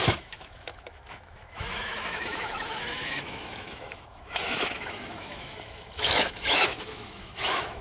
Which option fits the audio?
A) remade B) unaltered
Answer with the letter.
A